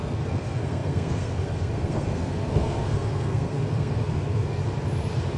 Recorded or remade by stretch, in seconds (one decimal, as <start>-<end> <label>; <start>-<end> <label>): 0.0-4.6 remade; 4.6-5.4 recorded